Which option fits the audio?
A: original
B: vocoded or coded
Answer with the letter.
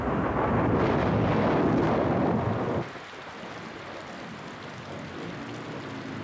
A